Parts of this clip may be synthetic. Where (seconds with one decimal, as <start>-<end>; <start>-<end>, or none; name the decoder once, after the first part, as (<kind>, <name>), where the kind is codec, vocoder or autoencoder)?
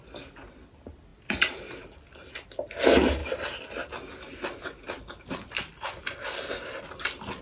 none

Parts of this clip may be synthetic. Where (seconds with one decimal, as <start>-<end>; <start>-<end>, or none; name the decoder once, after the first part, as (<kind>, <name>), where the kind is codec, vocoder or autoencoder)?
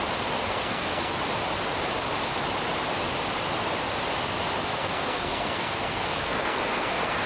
0.4-1.1 (codec, SNAC); 4.7-7.3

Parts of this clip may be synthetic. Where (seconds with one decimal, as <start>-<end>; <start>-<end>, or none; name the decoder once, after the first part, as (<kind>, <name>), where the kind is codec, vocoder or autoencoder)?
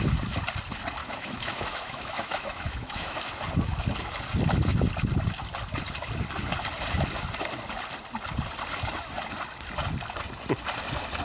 1.0-3.2 (autoencoder, DAC-VAE)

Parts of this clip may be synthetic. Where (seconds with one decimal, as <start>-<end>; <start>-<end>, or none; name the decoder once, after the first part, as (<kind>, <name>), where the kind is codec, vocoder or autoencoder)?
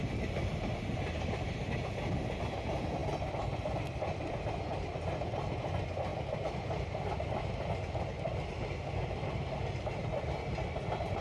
3.0-4.5 (vocoder, BigVGAN v2); 6.1-7.5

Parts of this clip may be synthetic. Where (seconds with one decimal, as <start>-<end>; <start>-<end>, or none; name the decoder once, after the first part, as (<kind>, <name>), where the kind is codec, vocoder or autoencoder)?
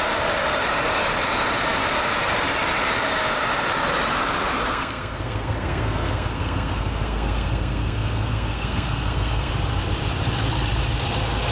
4.6-9.5 (codec, SNAC)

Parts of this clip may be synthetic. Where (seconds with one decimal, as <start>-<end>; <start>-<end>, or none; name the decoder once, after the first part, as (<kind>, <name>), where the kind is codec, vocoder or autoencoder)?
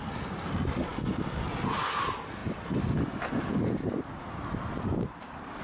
none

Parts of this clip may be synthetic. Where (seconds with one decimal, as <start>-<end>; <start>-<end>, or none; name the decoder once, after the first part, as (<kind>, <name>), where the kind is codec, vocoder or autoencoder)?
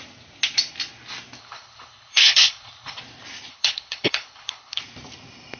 1.4-3.0 (codec, HILCodec); 3.5-4.8